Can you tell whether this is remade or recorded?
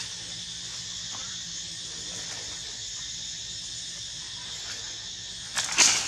remade